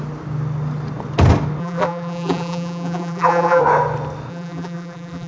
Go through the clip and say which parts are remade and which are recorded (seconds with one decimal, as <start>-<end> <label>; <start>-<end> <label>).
0.0-1.6 recorded; 1.6-3.6 remade; 3.6-4.3 recorded; 4.3-5.3 remade